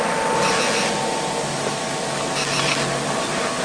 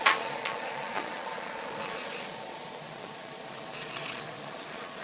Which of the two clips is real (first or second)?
first